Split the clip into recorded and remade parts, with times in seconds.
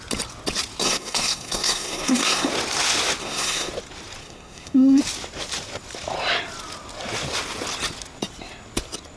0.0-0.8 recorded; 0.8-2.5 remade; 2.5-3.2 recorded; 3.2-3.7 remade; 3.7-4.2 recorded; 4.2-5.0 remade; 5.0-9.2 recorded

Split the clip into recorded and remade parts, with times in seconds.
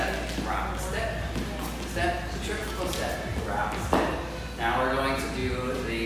0.0-6.1 recorded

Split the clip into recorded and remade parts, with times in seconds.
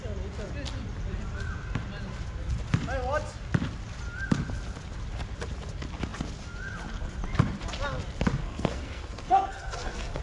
0.0-8.4 recorded; 8.4-10.2 remade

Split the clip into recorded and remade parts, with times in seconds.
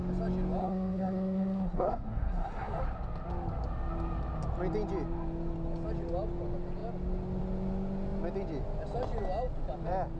0.0-0.6 recorded; 0.6-2.8 remade; 2.8-10.2 recorded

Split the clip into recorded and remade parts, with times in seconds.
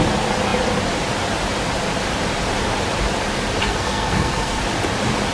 0.0-3.6 recorded; 3.6-4.6 remade; 4.6-5.3 recorded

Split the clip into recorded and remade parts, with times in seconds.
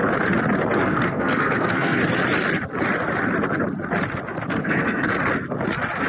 0.0-0.8 recorded; 0.8-2.0 remade; 2.0-4.6 recorded; 4.6-5.1 remade; 5.1-6.1 recorded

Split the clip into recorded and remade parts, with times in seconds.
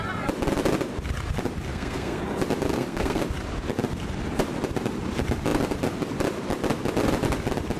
0.0-1.7 recorded; 1.7-2.2 remade; 2.2-2.7 recorded; 2.7-3.2 remade; 3.2-7.8 recorded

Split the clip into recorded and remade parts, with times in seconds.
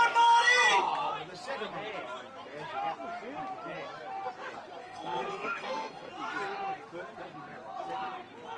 0.0-4.8 recorded; 4.8-6.1 remade; 6.1-8.6 recorded